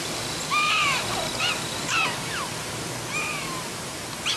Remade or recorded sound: recorded